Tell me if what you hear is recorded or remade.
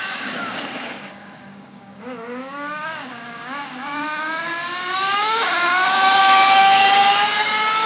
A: remade